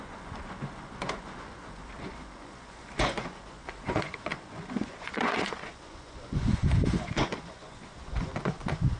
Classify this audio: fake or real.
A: fake